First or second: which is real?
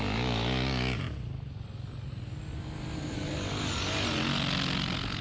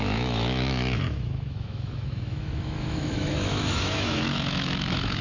first